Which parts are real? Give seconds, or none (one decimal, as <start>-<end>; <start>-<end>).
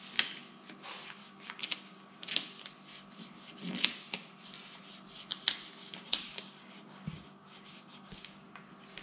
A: 0.0-1.2; 2.3-5.8; 8.6-9.0